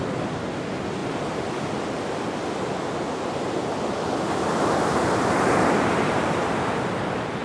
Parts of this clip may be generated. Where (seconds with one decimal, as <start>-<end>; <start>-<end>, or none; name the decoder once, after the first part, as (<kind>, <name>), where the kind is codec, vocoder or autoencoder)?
none